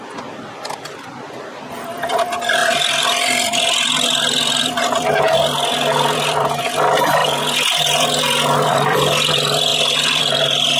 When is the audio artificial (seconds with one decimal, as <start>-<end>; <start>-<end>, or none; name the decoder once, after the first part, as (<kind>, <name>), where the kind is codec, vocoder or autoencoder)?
0.0-10.8 (vocoder, BigVGAN v2)